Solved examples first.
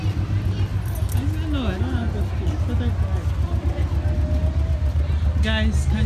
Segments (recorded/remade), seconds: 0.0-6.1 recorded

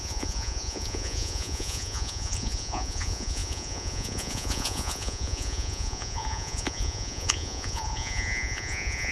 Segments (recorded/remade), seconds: 0.0-9.1 remade

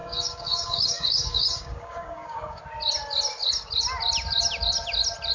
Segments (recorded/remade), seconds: 0.0-2.6 remade; 2.6-5.3 recorded

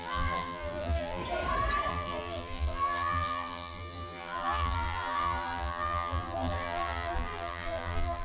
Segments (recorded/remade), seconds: 0.0-1.2 remade; 1.2-1.9 recorded; 1.9-8.2 remade

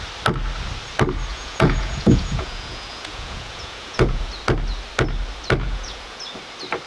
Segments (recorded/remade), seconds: 0.0-1.3 recorded; 1.3-4.3 remade; 4.3-5.6 recorded; 5.6-6.2 remade; 6.2-6.9 recorded

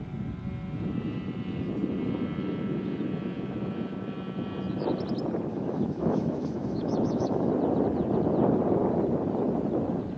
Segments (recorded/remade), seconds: 0.0-5.5 recorded; 5.5-7.5 remade; 7.5-10.2 recorded

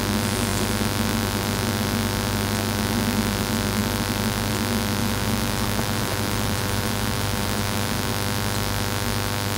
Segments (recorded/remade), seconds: 0.0-5.0 recorded; 5.0-8.1 remade; 8.1-9.6 recorded